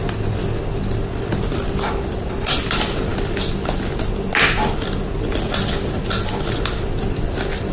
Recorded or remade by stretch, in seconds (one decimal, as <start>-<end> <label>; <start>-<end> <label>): 0.0-7.7 recorded